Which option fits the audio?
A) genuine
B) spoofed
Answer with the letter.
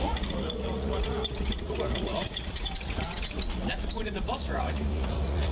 B